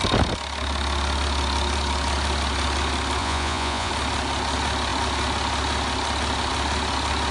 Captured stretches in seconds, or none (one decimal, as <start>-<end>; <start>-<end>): 0.0-3.2; 3.9-7.3